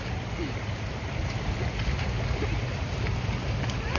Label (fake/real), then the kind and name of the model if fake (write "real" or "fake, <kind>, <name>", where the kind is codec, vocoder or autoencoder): real